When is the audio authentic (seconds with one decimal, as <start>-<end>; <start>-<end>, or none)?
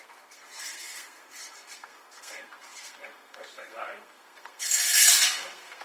none